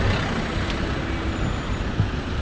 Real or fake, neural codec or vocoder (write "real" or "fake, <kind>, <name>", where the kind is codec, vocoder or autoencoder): real